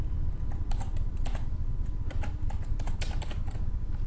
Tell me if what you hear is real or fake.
real